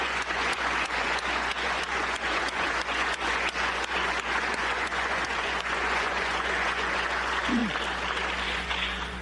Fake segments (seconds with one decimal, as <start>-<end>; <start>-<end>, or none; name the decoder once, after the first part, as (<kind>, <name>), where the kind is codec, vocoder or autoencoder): 0.0-7.6 (vocoder, Vocos); 8.4-9.2